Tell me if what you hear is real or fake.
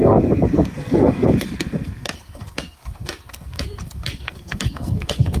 fake